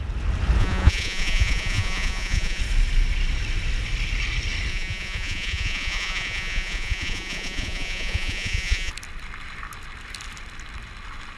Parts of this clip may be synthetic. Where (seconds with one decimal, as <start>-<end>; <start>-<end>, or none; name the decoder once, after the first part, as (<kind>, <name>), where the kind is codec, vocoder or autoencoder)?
0.6-2.6 (vocoder, Vocos); 4.7-8.9